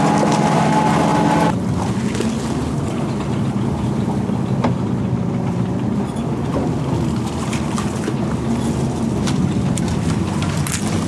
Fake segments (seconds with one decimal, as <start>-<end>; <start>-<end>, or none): none